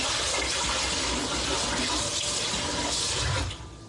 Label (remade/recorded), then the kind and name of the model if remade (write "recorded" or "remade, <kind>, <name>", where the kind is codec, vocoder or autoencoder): recorded